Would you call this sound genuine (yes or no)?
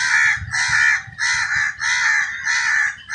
yes